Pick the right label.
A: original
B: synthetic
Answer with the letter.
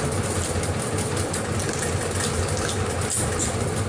A